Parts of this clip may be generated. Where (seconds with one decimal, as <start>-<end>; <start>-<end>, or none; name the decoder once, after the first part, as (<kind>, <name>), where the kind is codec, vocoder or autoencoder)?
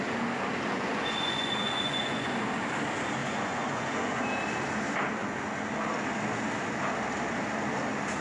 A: 0.7-2.3 (vocoder, Vocos); 3.2-4.2; 5.2-5.7